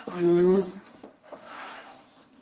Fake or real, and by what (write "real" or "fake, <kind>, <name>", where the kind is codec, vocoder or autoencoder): fake, codec, SNAC